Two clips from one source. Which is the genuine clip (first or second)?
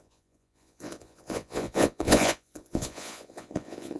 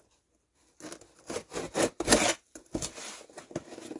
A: second